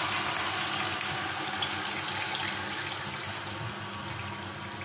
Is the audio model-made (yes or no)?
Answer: no